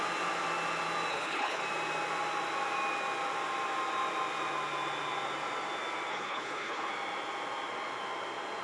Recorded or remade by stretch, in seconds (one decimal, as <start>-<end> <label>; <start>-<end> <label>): 0.0-1.1 recorded; 1.1-1.6 remade; 1.6-6.1 recorded; 6.1-6.9 remade; 6.9-8.6 recorded